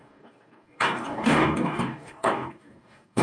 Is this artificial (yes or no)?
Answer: yes